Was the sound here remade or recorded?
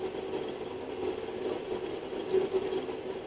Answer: recorded